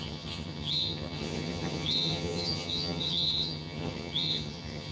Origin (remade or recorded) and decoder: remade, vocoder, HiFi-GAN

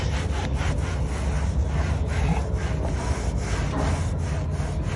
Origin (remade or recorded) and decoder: recorded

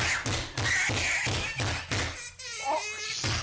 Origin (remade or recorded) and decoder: recorded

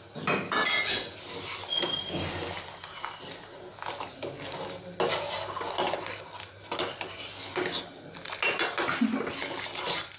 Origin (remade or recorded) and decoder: recorded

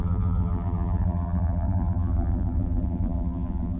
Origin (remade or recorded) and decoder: remade, vocoder, BigVGAN v2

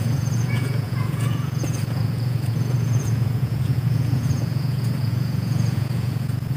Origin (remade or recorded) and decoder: remade, vocoder, Vocos